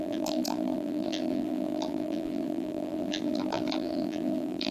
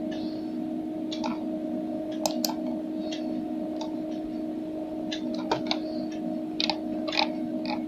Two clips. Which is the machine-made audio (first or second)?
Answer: first